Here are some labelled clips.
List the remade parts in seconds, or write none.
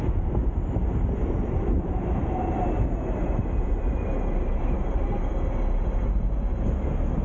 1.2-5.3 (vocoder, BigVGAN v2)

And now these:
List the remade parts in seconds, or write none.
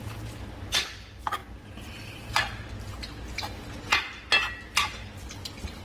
none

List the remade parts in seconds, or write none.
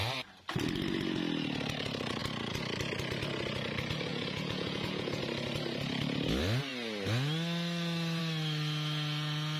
4.1-5.2 (vocoder, Vocos)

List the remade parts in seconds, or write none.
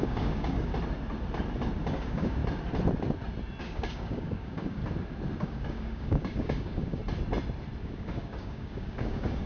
0.0-0.7 (codec, DAC); 1.8-2.4; 3.6-4.8; 5.4-7.0; 7.8-9.5